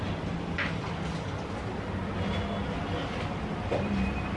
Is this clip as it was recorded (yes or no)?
yes